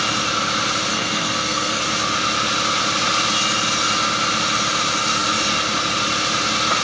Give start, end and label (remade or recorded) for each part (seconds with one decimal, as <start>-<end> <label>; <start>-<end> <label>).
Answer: 0.0-0.9 recorded; 0.9-1.8 remade; 1.8-6.8 recorded